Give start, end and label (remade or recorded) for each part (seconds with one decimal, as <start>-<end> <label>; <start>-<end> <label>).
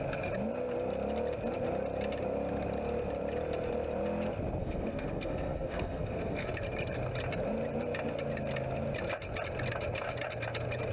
0.0-4.6 recorded; 4.6-6.5 remade; 6.5-10.9 recorded